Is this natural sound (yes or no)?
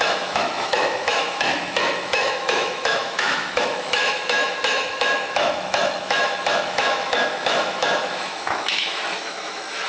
no